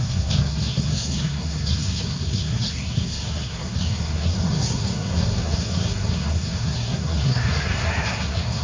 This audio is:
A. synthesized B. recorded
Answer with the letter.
A